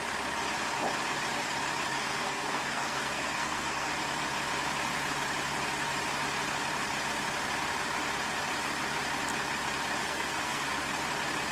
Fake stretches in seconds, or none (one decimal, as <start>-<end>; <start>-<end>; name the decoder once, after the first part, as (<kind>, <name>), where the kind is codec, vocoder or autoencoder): 1.9-3.9 (codec, SNAC); 10.0-10.9